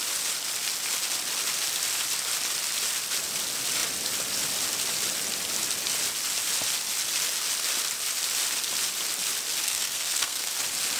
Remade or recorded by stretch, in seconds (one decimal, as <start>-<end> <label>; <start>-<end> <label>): 0.0-9.6 recorded; 9.6-10.5 remade; 10.5-11.0 recorded